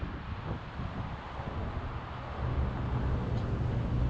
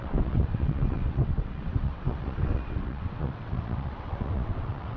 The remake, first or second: second